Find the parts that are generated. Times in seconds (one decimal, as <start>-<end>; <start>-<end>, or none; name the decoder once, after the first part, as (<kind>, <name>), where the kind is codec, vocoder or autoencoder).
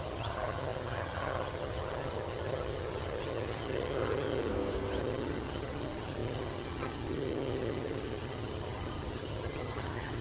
0.0-4.5 (vocoder, HiFi-GAN); 5.0-10.2